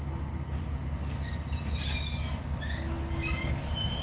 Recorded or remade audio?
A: recorded